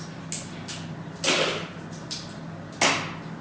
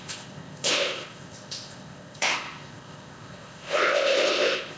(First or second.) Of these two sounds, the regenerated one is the second